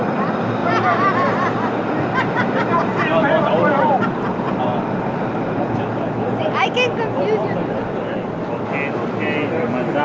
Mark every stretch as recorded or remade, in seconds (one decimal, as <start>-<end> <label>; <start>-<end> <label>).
0.0-10.0 recorded